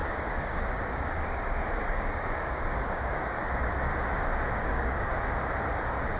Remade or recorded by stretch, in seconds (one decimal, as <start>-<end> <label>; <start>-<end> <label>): 0.0-3.9 remade; 3.9-4.5 recorded; 4.5-5.1 remade; 5.1-5.8 recorded; 5.8-6.2 remade